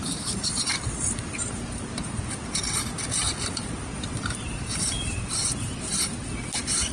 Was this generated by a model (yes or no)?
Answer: no